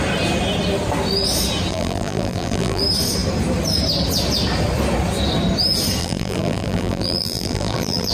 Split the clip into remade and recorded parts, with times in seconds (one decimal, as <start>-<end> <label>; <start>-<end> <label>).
0.0-1.7 recorded; 1.7-2.8 remade; 2.8-6.0 recorded; 6.0-8.1 remade